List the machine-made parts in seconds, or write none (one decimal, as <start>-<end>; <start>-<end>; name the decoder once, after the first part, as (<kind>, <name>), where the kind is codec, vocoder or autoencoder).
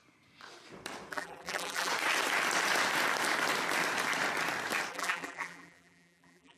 1.1-1.9 (vocoder, BigVGAN v2); 4.9-6.6